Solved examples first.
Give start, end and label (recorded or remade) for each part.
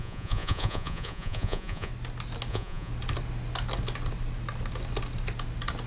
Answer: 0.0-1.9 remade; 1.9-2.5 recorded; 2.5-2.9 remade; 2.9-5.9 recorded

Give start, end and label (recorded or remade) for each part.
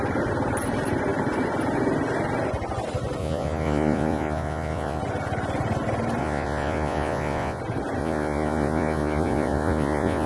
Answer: 0.0-3.2 recorded; 3.2-5.0 remade; 5.0-6.2 recorded; 6.2-7.6 remade; 7.6-8.0 recorded; 8.0-10.3 remade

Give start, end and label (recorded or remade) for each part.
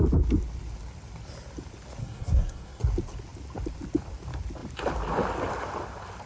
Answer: 0.0-2.0 recorded; 2.0-2.8 remade; 2.8-6.3 recorded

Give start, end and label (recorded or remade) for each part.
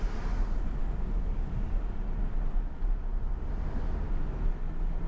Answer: 0.0-5.1 recorded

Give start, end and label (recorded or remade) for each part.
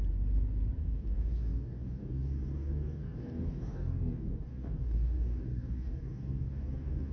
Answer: 0.0-0.8 recorded; 0.8-7.1 remade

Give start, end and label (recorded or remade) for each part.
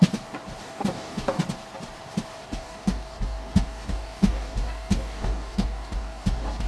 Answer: 0.0-0.6 recorded; 0.6-1.4 remade; 1.4-2.4 recorded; 2.4-6.7 remade